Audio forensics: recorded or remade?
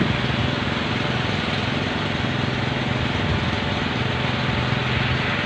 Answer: recorded